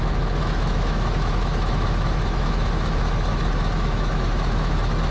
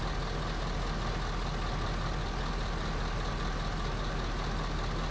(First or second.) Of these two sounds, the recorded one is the second